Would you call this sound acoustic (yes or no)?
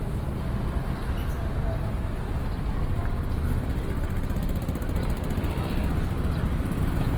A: yes